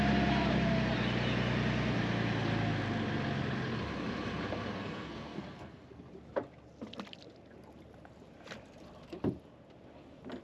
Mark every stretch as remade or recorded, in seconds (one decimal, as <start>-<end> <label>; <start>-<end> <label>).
0.0-4.7 recorded; 4.7-6.1 remade; 6.1-10.4 recorded

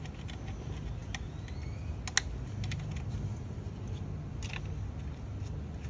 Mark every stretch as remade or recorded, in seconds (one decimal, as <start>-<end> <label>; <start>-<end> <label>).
0.0-5.9 recorded

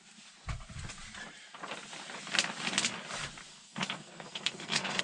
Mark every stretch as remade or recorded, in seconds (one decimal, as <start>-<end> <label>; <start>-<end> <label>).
0.0-3.5 recorded; 3.5-5.0 remade